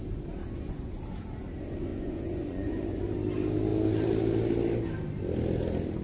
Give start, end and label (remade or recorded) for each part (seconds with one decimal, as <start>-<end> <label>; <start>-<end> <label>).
0.0-0.4 recorded; 0.4-0.9 remade; 0.9-1.9 recorded; 1.9-3.0 remade; 3.0-6.0 recorded